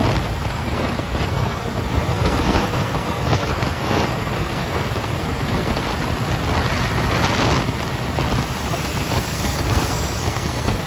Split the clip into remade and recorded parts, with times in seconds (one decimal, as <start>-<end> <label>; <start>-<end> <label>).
0.0-0.5 recorded; 0.5-5.9 remade; 5.9-8.7 recorded; 8.7-10.9 remade